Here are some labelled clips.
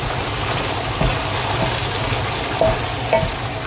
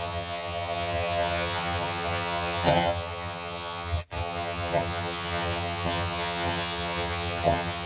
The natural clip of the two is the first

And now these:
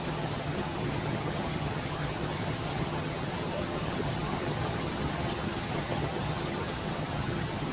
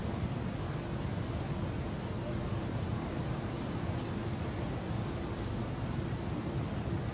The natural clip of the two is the second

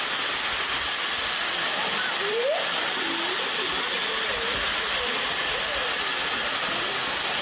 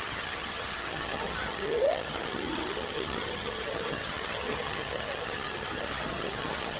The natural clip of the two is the first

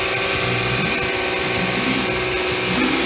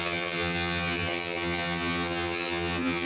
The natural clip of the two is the first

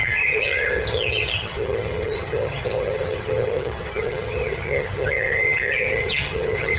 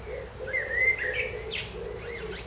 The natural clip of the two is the second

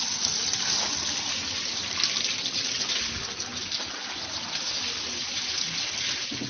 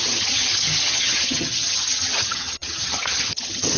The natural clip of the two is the first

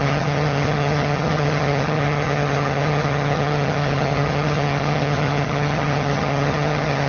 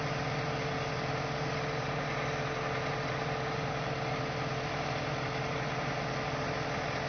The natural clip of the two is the second